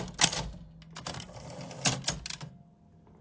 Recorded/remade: recorded